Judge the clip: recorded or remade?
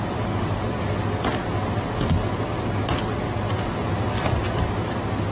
recorded